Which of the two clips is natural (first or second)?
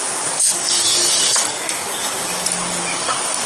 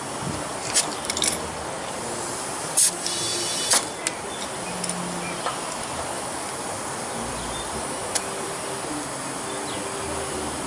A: second